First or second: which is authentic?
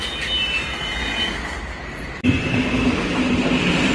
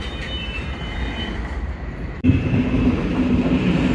first